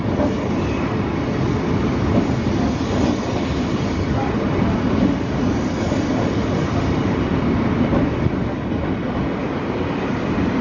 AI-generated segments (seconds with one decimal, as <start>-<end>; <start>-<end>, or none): 9.4-10.2